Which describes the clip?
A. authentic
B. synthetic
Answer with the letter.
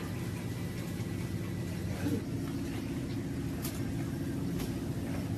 A